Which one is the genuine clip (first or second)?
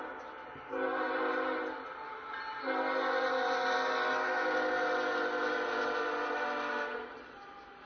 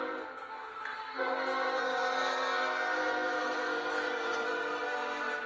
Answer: first